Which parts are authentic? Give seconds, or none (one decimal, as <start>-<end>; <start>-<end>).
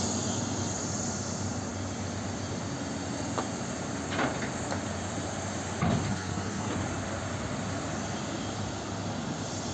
0.0-6.1; 6.7-9.7